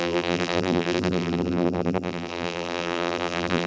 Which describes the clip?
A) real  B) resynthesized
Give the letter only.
B